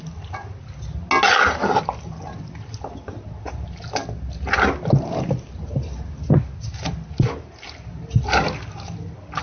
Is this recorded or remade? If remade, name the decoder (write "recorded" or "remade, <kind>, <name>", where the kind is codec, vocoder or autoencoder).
recorded